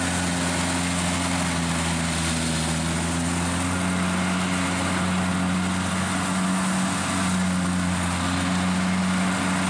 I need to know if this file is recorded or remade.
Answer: recorded